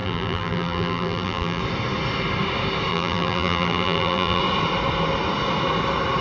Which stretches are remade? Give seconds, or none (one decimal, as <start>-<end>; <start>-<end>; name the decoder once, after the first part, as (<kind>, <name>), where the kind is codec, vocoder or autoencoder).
0.0-1.6 (vocoder, BigVGAN v2); 2.9-4.4